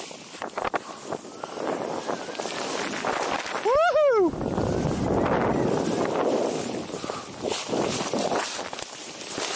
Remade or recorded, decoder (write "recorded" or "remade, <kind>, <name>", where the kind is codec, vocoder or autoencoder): recorded